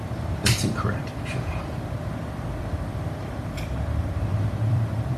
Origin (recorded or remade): remade